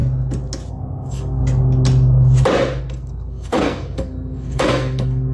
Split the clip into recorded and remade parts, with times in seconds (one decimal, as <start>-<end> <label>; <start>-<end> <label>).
0.0-0.7 recorded; 0.7-1.4 remade; 1.4-2.8 recorded; 2.8-5.3 remade